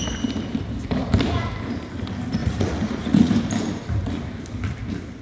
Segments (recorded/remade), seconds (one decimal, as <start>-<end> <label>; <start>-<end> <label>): 0.0-2.4 recorded; 2.4-3.3 remade; 3.3-5.2 recorded